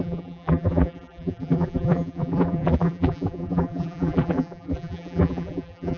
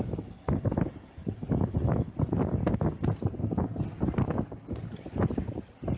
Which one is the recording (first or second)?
second